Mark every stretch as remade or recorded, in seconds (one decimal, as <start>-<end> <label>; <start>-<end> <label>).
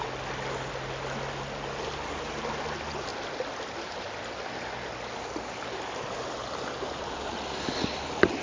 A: 0.0-8.4 recorded